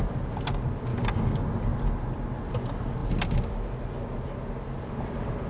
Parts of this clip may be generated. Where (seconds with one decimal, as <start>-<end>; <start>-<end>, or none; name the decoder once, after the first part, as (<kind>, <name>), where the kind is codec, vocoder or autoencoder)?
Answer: 0.9-1.5 (codec, DAC)